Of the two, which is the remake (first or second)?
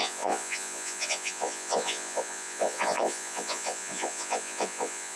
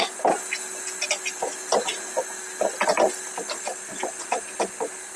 first